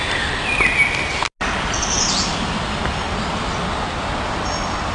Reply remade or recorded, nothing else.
recorded